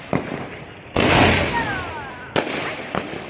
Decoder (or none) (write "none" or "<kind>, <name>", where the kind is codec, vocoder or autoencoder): none